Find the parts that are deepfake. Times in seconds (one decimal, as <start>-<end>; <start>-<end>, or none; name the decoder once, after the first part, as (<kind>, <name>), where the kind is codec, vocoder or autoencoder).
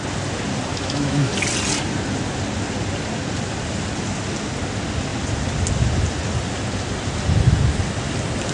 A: 0.7-1.3 (autoencoder, DAC-VAE)